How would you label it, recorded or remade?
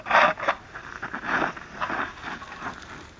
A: remade